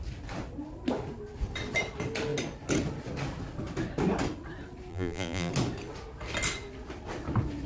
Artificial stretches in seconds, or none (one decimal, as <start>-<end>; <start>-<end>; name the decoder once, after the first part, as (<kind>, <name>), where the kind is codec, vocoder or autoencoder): 4.9-5.5 (vocoder, BigVGAN v2)